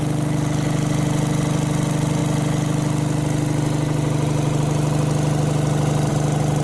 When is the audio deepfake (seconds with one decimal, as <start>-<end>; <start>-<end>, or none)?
none